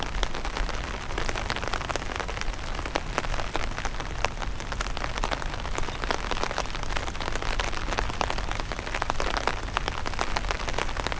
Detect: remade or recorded recorded